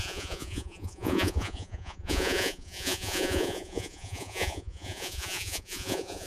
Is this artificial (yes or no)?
yes